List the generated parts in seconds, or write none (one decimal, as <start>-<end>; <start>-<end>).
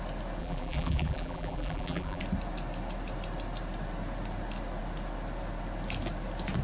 0.4-2.2